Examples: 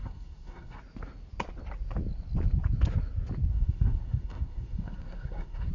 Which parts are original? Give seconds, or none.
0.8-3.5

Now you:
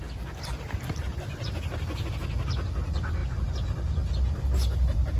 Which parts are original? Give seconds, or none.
0.0-5.2

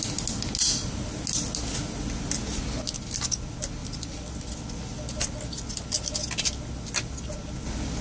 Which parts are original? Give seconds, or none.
0.0-8.0

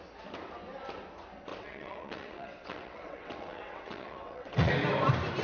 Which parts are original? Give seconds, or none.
0.0-1.5; 4.7-5.4

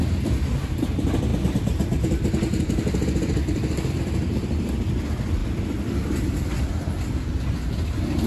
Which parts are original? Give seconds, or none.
0.0-1.3; 4.7-5.4; 7.4-8.3

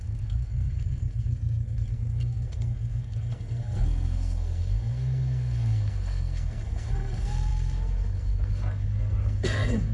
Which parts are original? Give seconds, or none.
none

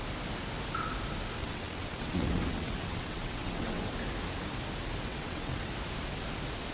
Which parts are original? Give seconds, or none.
0.0-1.4; 3.8-5.1; 5.7-6.7

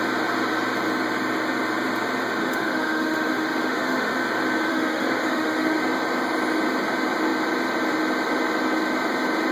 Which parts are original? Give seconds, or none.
0.0-2.4; 4.1-4.7; 5.8-9.5